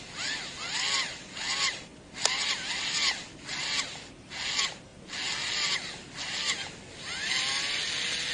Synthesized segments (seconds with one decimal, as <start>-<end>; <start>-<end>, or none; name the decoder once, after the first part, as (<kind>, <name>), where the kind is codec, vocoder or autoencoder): none